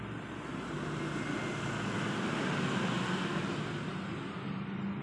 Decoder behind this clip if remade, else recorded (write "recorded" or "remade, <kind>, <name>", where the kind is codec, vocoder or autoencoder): recorded